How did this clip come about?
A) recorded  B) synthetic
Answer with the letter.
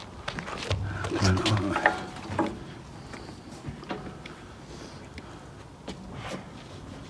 A